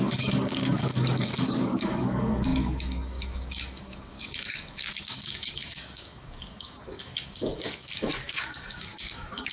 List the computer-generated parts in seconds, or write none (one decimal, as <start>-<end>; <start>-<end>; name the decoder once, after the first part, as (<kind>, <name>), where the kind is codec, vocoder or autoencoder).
0.0-9.5 (codec, DAC)